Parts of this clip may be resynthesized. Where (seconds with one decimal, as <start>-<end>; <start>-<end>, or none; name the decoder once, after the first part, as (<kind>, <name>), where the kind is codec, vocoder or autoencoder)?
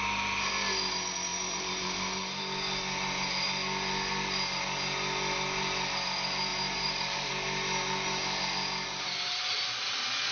1.3-2.4 (vocoder, BigVGAN v2); 6.5-7.3